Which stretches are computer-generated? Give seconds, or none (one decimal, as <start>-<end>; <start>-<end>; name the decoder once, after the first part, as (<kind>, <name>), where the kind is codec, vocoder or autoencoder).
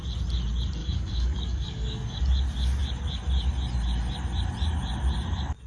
0.8-2.2 (codec, DAC)